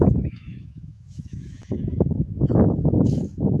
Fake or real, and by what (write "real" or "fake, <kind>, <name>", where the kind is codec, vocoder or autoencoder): fake, autoencoder, DAC-VAE